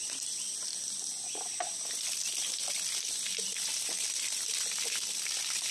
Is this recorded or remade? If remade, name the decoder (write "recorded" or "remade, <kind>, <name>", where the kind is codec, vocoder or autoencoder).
recorded